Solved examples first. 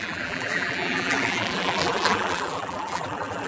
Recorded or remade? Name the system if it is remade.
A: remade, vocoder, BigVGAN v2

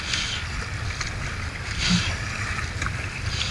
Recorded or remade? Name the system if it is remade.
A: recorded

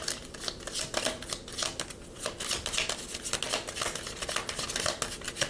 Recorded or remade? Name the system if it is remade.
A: recorded